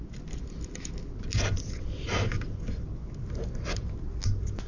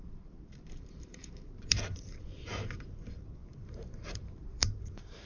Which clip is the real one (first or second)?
first